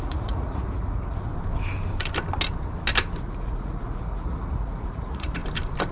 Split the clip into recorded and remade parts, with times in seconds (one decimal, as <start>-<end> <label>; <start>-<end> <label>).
0.0-1.3 remade; 1.3-3.2 recorded; 3.2-5.4 remade; 5.4-5.9 recorded